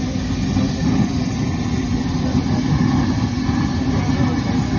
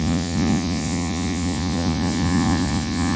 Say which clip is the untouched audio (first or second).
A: first